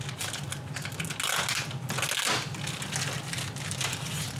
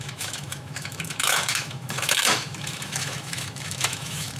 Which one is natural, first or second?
first